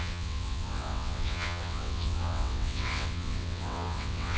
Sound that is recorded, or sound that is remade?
remade